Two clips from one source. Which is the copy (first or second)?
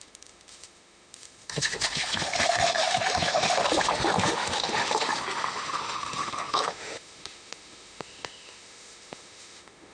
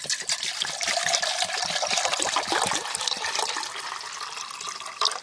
first